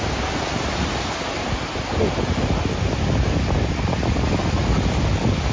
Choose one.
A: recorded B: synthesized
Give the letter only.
A